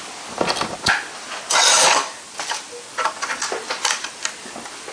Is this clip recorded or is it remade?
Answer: recorded